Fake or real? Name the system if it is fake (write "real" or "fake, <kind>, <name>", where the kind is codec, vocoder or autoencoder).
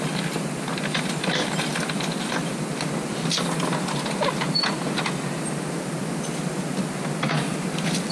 real